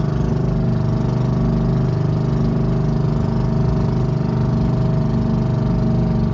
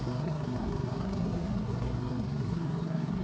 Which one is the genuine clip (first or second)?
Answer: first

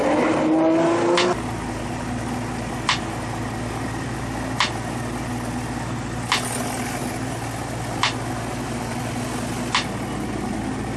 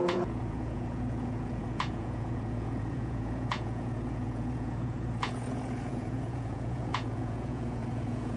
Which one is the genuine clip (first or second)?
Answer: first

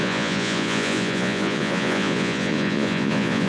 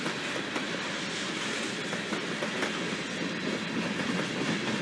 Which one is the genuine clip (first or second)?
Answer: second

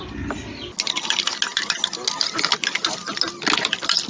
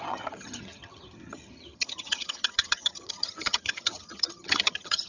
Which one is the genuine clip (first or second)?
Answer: first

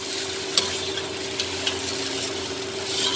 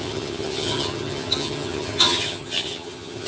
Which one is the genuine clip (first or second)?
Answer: first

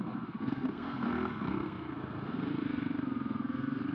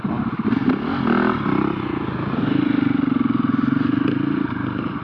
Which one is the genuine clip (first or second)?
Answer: second